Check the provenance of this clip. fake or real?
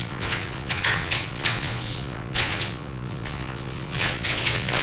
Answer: fake